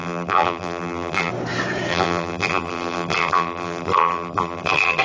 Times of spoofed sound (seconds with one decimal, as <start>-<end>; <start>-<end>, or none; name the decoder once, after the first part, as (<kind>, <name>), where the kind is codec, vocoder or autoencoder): 0.0-1.3 (vocoder, BigVGAN v2); 1.9-5.0